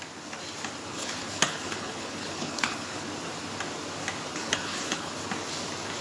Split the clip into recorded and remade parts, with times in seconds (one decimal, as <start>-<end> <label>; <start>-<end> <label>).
0.0-0.8 recorded; 0.8-3.1 remade; 3.1-4.3 recorded; 4.3-5.1 remade; 5.1-6.0 recorded